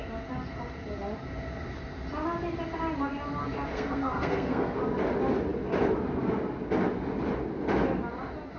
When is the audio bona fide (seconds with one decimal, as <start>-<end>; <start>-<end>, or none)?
0.0-3.7; 4.8-8.6